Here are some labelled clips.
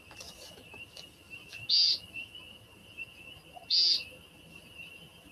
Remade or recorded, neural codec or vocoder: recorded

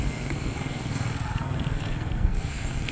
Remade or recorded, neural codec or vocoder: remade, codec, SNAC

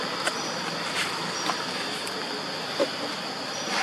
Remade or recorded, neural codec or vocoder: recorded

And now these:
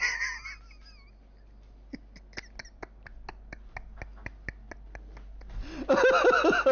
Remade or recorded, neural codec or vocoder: recorded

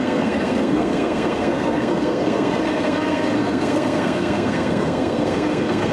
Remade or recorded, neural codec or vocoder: remade, codec, SNAC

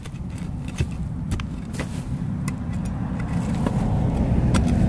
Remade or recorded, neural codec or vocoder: recorded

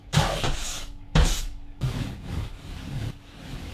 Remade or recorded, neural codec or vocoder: remade, codec, DAC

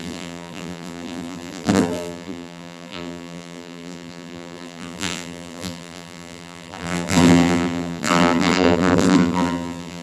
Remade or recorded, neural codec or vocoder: remade, vocoder, BigVGAN v2